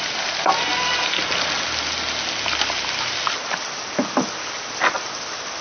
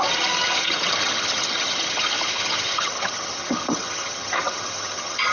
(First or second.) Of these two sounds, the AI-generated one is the second